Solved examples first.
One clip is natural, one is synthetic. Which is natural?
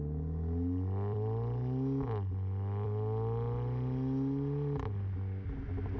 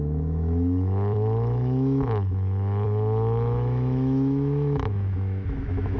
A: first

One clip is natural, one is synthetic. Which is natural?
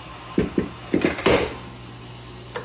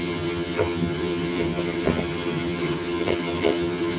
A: first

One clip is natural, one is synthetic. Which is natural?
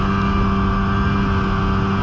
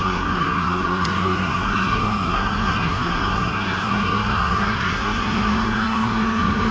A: first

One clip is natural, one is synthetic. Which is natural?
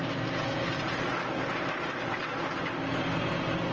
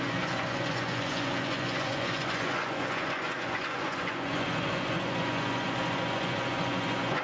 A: first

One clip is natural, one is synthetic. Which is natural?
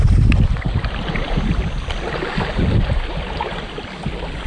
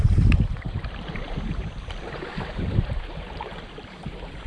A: first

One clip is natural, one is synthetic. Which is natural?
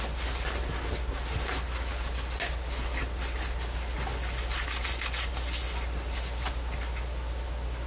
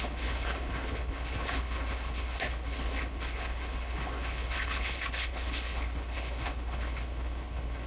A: first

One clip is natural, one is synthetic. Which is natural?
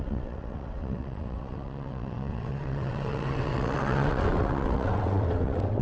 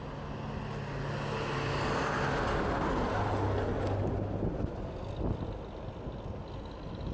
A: second